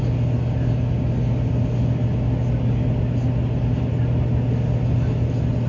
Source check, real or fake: real